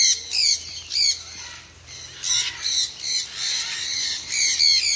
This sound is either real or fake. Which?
real